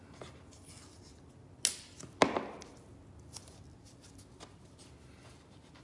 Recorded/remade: recorded